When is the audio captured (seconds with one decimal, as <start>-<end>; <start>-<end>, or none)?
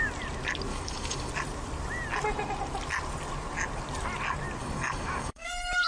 0.0-0.7; 1.3-4.6; 5.5-5.9